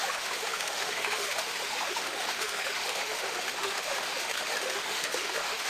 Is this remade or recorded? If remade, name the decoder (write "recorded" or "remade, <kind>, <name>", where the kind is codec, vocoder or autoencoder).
remade, autoencoder, DAC-VAE